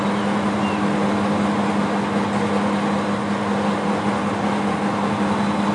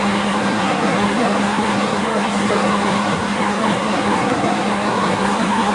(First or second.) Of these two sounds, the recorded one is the first